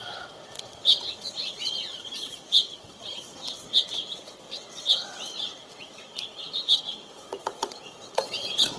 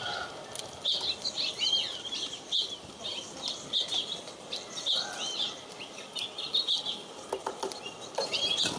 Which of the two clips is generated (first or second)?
first